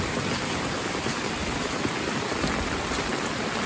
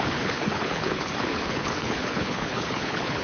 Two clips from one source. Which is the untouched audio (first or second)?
first